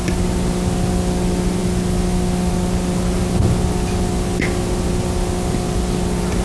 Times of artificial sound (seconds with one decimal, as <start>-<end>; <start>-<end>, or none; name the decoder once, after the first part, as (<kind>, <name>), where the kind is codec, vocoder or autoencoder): none